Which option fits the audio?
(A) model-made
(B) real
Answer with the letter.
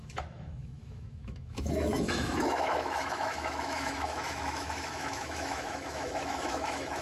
A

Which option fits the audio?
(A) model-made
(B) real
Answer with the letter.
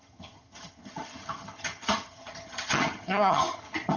A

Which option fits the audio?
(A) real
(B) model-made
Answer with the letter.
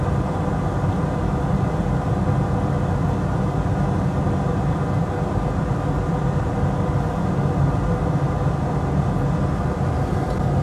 A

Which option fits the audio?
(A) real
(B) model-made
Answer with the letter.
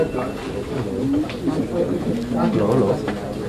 A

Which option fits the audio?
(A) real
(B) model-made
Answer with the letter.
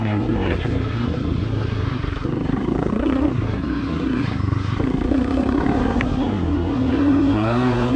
B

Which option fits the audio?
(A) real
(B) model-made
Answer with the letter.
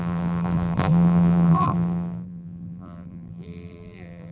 B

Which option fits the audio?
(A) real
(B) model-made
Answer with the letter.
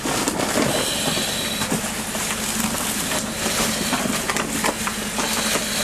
A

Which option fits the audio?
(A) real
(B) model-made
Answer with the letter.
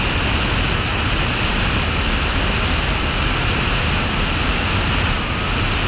A